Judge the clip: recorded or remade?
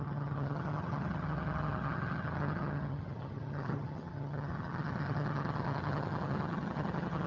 remade